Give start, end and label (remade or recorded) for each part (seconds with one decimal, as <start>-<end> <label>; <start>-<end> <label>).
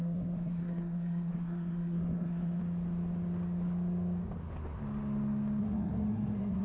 0.0-2.6 remade; 2.6-5.6 recorded; 5.6-6.6 remade